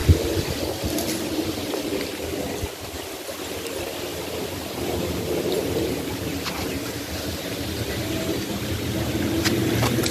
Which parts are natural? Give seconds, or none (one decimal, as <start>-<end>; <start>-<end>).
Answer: 0.0-4.1; 7.0-10.1